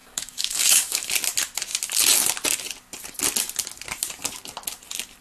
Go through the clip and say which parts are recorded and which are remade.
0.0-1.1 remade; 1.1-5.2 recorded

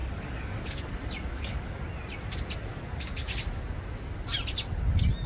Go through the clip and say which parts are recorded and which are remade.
0.0-0.9 remade; 0.9-1.3 recorded; 1.3-1.8 remade; 1.8-2.7 recorded; 2.7-3.4 remade; 3.4-5.3 recorded